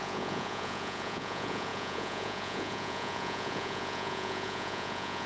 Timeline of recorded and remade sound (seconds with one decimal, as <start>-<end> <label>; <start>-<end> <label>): 0.0-5.3 remade